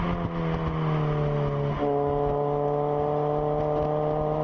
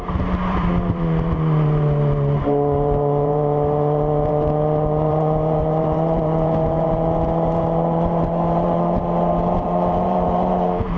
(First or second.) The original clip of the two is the first